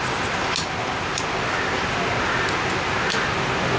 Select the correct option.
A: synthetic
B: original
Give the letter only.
B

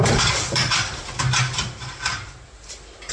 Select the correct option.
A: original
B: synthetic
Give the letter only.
A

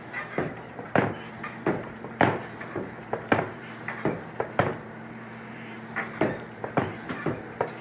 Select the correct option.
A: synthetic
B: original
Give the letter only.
A